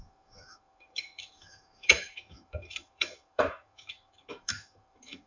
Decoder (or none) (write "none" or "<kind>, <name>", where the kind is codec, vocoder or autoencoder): autoencoder, DAC-VAE